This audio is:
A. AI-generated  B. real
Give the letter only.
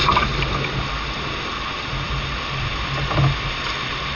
B